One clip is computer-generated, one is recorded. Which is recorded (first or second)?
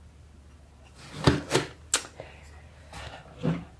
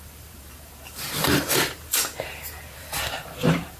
first